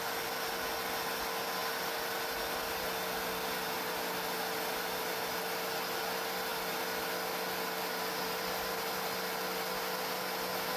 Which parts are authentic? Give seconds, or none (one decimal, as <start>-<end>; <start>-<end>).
0.0-10.8